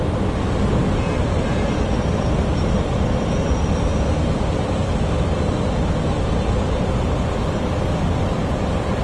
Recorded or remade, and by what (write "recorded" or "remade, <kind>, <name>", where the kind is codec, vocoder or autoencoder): recorded